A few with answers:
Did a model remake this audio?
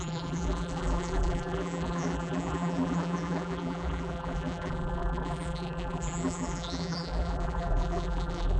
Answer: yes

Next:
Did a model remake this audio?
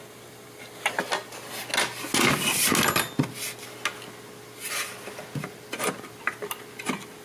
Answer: no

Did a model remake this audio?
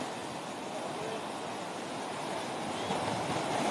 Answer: no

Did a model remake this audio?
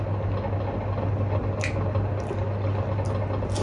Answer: no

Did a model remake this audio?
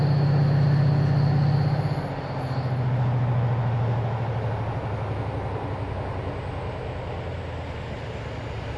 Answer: no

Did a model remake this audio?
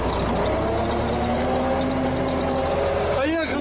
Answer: no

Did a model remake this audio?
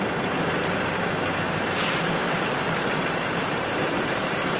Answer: yes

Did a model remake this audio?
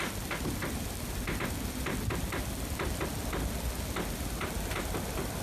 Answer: no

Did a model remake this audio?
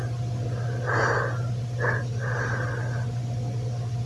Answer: no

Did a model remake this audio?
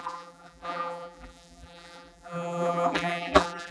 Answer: yes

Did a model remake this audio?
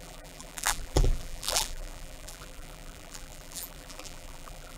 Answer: yes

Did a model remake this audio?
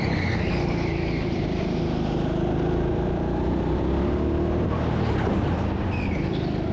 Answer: no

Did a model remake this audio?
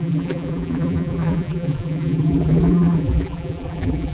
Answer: yes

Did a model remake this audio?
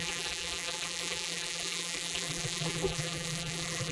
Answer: yes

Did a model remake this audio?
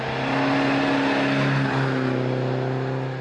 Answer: no